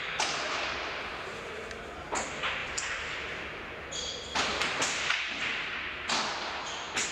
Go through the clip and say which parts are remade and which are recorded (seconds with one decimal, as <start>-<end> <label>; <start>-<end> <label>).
0.0-2.6 recorded; 2.6-3.4 remade; 3.4-4.5 recorded; 4.5-5.7 remade; 5.7-7.1 recorded